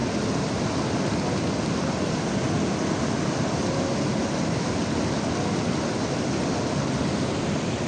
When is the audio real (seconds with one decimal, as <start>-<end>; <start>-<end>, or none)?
0.0-7.9